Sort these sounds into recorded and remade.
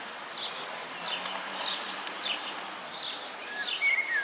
remade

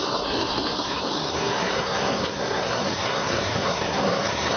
remade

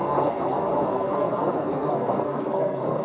remade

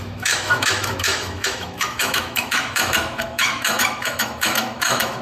remade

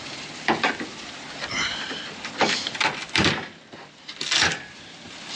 recorded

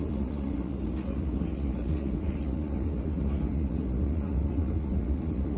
remade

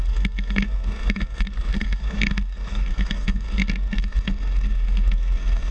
remade